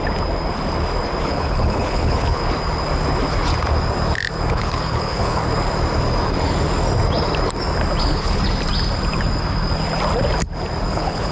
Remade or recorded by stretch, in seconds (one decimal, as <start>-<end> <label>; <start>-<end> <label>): 0.0-1.2 recorded; 1.2-2.4 remade; 2.4-4.5 recorded; 4.5-5.4 remade; 5.4-8.0 recorded; 8.0-8.4 remade; 8.4-10.9 recorded; 10.9-11.3 remade